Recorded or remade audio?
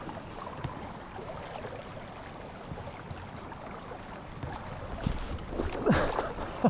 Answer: recorded